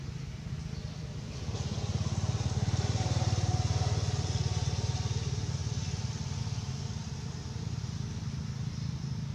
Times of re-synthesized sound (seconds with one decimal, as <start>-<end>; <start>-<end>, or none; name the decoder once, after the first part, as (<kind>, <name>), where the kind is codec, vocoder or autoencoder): none